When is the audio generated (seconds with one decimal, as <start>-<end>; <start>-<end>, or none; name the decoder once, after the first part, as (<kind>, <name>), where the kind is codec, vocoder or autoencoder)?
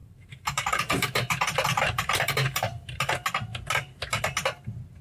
0.0-3.0 (vocoder, BigVGAN v2)